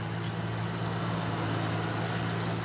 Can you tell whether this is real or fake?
real